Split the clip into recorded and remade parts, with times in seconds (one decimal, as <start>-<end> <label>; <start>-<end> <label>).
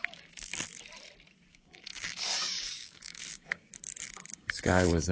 0.0-0.5 remade; 0.5-1.5 recorded; 1.5-3.7 remade; 3.7-4.3 recorded; 4.3-5.1 remade